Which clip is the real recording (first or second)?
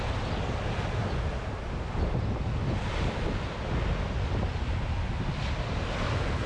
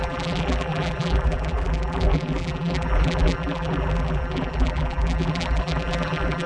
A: first